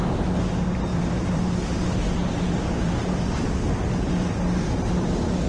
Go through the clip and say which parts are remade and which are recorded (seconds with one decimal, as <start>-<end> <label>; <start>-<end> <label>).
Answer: 0.0-0.9 recorded; 0.9-3.6 remade; 3.6-5.5 recorded